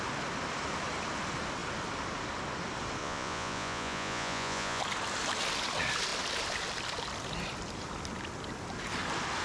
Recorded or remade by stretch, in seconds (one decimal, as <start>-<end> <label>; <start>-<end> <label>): 0.0-3.0 recorded; 3.0-4.8 remade; 4.8-9.4 recorded